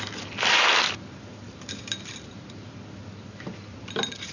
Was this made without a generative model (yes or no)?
no